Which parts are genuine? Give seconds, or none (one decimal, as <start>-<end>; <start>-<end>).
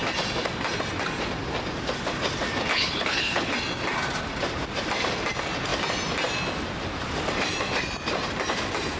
0.0-2.7; 3.5-9.0